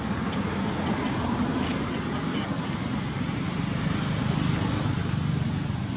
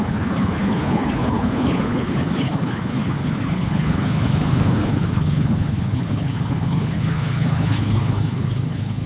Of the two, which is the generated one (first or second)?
second